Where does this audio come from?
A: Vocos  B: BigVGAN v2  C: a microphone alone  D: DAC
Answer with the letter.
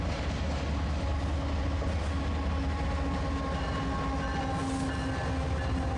C